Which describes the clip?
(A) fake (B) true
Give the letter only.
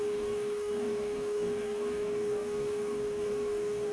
A